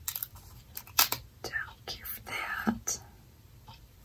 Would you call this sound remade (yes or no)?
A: yes